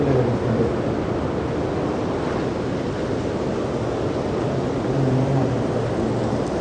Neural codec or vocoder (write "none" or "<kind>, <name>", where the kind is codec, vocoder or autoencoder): none